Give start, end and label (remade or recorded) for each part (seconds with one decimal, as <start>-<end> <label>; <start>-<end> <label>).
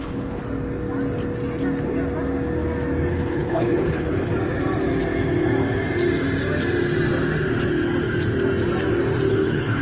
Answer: 0.0-0.4 remade; 0.4-3.1 recorded; 3.1-4.3 remade; 4.3-9.3 recorded; 9.3-9.8 remade